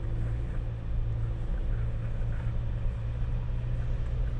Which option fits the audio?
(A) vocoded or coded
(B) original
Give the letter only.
B